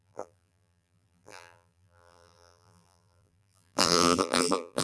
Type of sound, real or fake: fake